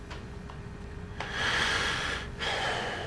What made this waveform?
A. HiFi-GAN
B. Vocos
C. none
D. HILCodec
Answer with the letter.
B